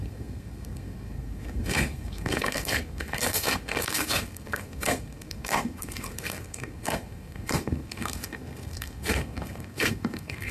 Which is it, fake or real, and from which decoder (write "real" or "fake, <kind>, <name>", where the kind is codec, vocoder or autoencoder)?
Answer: fake, codec, SNAC